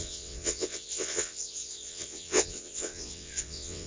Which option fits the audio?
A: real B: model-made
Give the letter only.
B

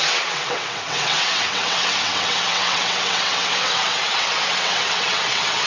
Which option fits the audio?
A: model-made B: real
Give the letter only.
A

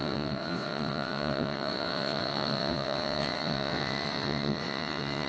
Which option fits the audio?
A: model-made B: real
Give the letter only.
A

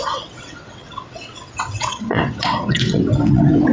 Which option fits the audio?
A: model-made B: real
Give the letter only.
A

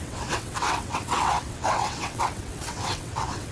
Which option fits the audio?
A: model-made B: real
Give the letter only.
A